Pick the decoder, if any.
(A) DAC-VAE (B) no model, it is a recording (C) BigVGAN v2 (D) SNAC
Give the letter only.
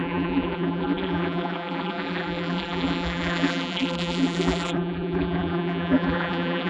C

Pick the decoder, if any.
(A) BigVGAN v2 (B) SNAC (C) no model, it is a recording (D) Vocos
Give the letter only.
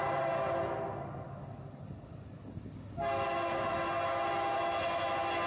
C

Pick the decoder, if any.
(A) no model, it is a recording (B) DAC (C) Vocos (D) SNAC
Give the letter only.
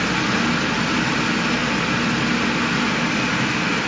A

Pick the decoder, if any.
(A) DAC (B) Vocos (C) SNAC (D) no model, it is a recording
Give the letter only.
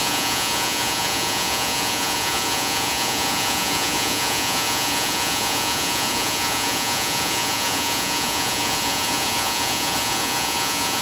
B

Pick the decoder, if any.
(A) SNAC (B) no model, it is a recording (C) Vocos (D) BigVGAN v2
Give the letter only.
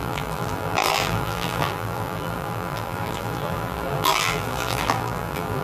D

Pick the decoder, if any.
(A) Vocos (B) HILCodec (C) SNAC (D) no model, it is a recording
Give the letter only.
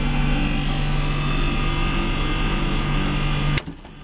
D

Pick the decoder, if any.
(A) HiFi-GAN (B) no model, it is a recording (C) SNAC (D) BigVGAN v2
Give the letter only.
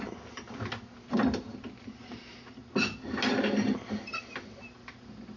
B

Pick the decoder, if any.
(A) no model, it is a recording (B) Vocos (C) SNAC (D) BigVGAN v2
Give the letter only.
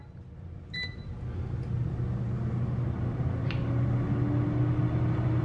A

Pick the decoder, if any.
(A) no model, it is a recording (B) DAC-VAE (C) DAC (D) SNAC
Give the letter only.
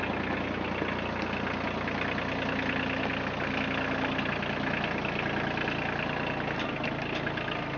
A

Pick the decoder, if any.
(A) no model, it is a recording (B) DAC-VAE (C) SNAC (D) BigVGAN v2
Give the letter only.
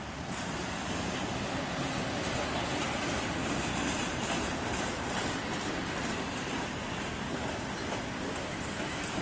A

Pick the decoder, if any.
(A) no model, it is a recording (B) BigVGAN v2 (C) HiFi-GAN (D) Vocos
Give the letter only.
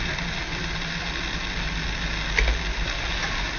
A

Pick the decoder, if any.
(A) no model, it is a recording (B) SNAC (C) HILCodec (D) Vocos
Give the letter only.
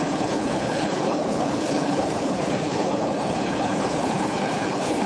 C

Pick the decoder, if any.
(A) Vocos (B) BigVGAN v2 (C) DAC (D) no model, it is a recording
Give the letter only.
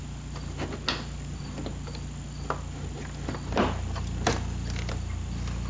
D